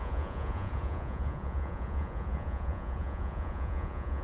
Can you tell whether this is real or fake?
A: fake